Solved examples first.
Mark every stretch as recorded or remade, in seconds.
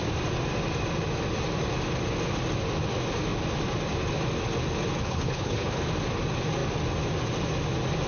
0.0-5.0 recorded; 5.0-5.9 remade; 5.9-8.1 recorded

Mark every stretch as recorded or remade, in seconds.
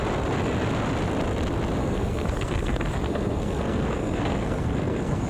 0.0-1.8 recorded; 1.8-5.3 remade